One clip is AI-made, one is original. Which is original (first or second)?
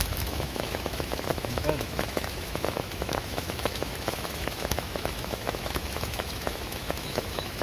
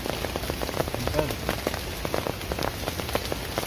second